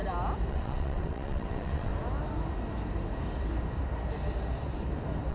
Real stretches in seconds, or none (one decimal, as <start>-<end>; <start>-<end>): 0.0-0.5; 1.9-5.3